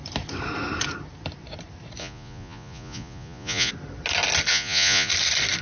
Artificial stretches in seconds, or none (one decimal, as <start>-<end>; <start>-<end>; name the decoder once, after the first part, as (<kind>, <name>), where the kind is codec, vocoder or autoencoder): 2.0-3.7 (vocoder, Vocos); 4.5-5.1